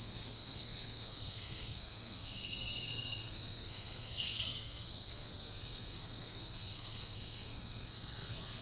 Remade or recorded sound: remade